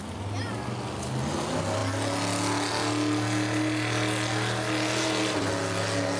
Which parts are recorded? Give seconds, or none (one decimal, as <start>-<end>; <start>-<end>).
0.0-6.2